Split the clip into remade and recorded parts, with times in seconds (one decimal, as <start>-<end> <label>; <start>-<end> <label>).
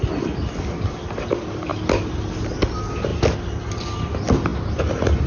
0.0-5.3 recorded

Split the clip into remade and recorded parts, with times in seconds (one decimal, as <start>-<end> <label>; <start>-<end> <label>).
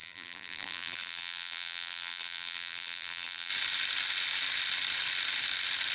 0.0-3.5 remade; 3.5-5.9 recorded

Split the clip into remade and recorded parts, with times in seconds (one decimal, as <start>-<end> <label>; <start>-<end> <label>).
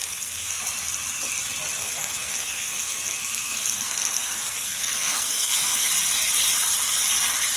0.0-0.6 remade; 0.6-1.8 recorded; 1.8-5.9 remade; 5.9-7.6 recorded